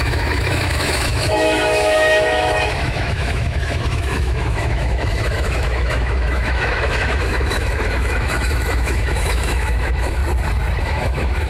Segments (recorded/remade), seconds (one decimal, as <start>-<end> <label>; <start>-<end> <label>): 0.0-10.2 remade; 10.2-10.8 recorded; 10.8-11.5 remade